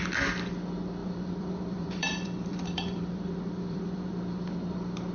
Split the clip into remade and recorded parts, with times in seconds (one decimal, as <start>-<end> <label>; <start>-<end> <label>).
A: 0.0-1.0 recorded; 1.0-4.1 remade; 4.1-5.1 recorded